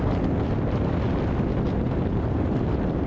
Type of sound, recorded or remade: recorded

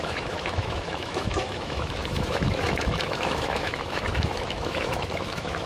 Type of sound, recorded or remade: remade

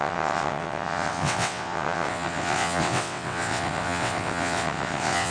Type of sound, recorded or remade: remade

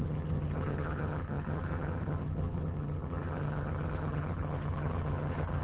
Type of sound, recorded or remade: remade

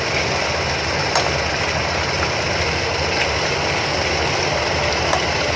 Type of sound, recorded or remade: recorded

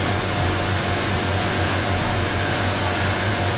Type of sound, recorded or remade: remade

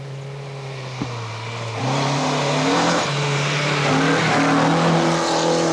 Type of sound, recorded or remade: recorded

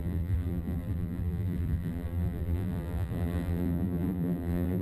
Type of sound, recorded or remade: remade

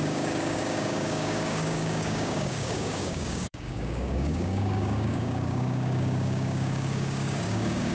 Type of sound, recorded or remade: remade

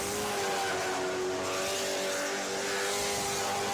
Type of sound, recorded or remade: recorded